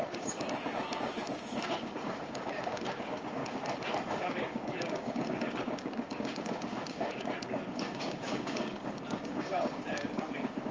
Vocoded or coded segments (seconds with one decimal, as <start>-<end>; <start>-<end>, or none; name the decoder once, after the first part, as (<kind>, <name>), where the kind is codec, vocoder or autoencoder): 0.0-3.4 (codec, DAC); 4.1-10.7